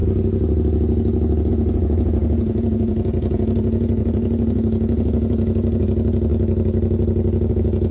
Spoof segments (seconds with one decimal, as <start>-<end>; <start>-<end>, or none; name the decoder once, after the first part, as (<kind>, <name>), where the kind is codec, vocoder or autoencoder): 1.5-6.3 (vocoder, Vocos); 7.5-7.9